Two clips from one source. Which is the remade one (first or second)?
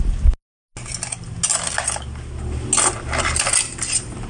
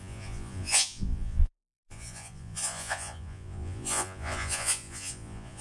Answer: second